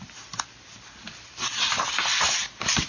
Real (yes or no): yes